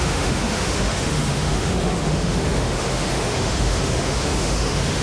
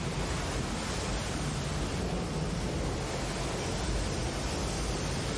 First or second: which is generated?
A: first